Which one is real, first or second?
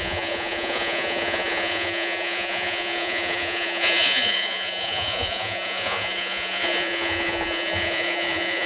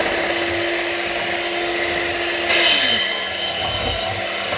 second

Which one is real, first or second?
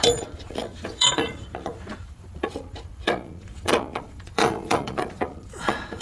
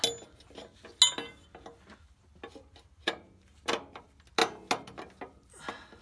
second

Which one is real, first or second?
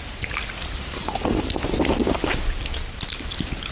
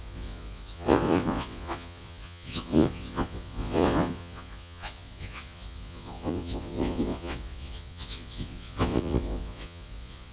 first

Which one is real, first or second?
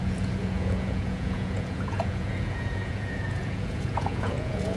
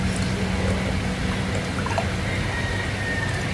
second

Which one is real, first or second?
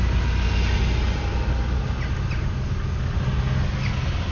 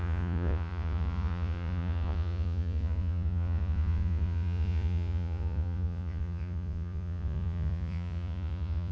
first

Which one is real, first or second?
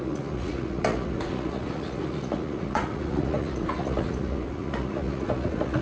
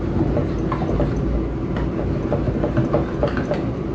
second